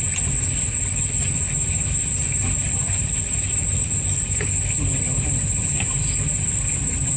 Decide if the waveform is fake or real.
real